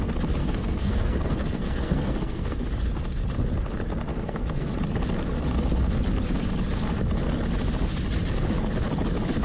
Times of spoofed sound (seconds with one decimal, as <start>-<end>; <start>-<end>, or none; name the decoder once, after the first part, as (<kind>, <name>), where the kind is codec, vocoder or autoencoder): 0.4-2.6 (codec, SNAC); 4.1-4.7